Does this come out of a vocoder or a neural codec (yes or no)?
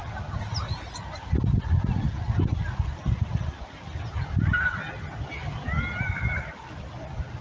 no